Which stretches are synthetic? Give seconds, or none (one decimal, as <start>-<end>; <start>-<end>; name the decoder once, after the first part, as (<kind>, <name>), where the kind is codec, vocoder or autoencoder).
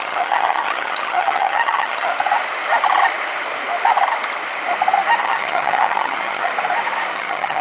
0.0-2.1 (vocoder, HiFi-GAN); 5.2-6.5; 7.1-7.6